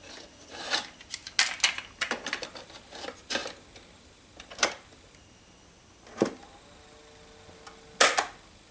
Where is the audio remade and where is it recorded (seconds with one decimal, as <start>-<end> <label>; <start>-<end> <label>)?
0.0-8.7 recorded